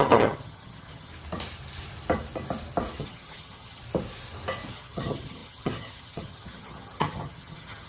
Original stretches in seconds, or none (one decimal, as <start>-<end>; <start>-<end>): 1.1-3.0; 3.8-4.7